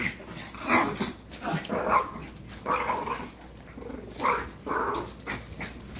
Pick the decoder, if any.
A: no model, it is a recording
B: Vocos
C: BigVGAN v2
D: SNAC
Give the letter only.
A